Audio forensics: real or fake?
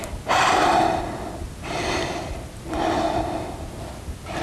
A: real